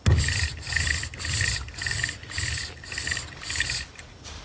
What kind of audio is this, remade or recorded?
recorded